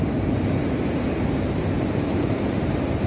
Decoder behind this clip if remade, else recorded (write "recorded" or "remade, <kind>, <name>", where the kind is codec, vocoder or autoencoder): remade, vocoder, BigVGAN v2